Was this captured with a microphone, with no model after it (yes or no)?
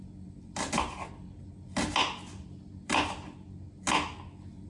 yes